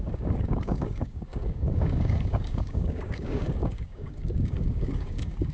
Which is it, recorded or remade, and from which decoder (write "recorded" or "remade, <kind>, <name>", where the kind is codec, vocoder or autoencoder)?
remade, codec, DAC